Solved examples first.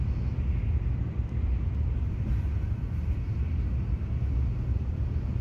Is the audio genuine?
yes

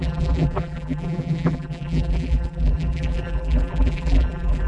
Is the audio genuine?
no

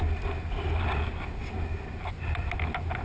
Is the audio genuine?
yes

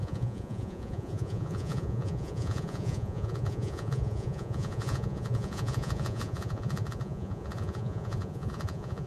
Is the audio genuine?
no